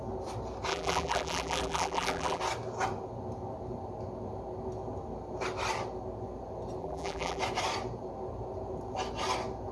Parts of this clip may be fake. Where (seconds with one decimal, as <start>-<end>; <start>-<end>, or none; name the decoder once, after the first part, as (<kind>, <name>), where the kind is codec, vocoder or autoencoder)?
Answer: 0.7-2.4 (vocoder, BigVGAN v2); 6.8-7.4